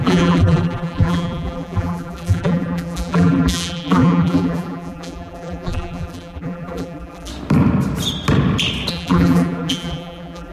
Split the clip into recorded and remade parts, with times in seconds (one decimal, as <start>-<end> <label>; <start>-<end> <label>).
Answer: 0.0-7.3 remade; 7.3-8.9 recorded; 8.9-10.5 remade